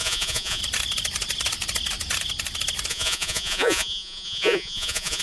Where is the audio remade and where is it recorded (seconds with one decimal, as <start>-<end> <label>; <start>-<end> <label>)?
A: 0.0-0.6 remade; 0.6-2.9 recorded; 2.9-5.2 remade